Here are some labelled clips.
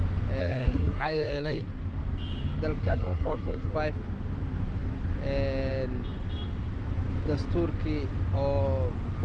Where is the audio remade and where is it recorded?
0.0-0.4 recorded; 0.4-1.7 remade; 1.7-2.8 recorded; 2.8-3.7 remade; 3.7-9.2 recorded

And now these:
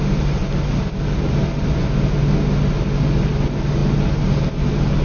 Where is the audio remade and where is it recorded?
0.0-5.0 recorded

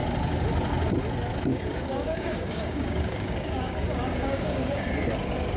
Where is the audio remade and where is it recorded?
0.0-1.5 recorded; 1.5-4.9 remade; 4.9-5.6 recorded

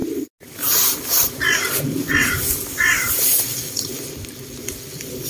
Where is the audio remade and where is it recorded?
0.0-5.3 recorded